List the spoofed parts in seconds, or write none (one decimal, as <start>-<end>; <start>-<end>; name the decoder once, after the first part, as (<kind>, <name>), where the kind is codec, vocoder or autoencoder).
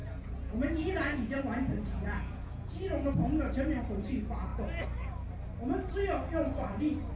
0.0-3.1 (vocoder, Vocos)